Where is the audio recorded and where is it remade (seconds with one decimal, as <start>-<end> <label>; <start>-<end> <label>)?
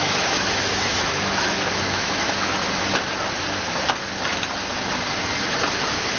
0.0-2.6 remade; 2.6-5.8 recorded; 5.8-6.2 remade